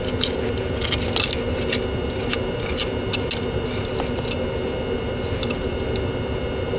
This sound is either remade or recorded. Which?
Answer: recorded